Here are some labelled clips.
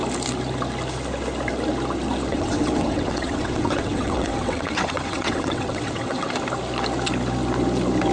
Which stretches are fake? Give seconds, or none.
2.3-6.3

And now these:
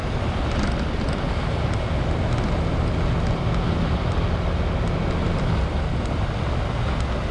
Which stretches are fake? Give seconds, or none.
none

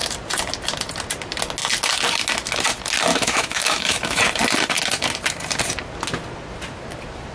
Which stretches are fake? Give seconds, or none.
3.1-4.2

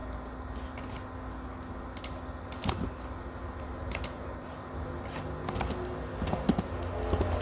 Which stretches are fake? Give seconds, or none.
none